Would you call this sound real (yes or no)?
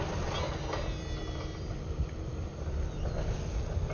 yes